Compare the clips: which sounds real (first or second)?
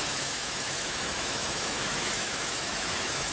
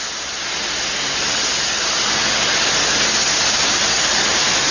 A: second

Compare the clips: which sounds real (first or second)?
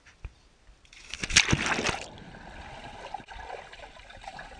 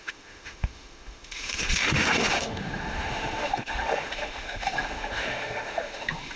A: first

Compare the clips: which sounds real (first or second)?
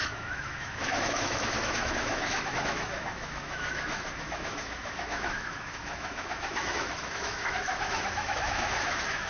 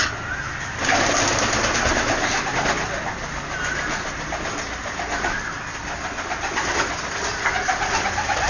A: second